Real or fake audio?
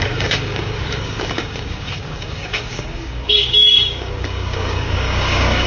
fake